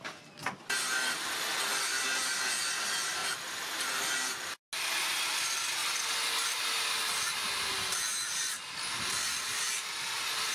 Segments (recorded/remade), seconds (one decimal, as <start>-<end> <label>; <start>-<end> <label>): 0.0-10.5 recorded